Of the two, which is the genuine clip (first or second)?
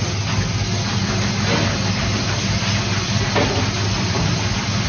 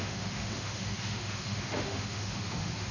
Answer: first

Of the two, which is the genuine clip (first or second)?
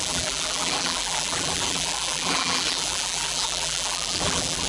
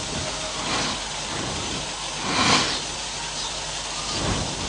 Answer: second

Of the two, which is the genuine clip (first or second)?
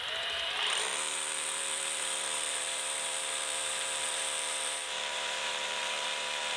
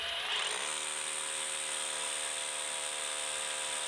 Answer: second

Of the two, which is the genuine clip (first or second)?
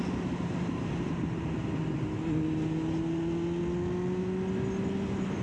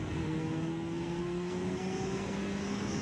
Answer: first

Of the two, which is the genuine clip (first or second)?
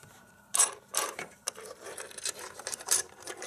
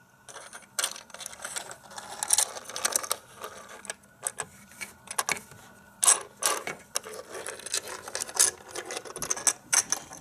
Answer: second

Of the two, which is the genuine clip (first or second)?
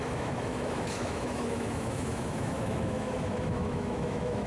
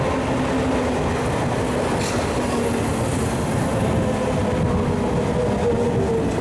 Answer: second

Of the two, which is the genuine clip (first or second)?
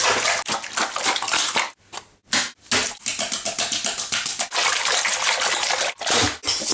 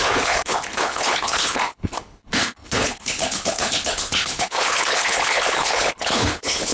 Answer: first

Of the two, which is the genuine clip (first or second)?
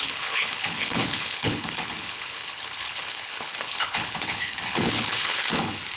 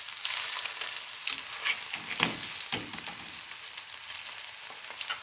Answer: second